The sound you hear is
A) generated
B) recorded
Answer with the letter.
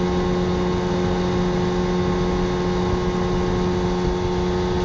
B